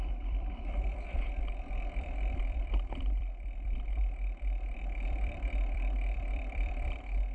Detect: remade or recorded remade